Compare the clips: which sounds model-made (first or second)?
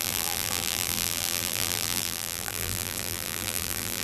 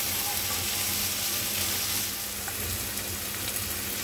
first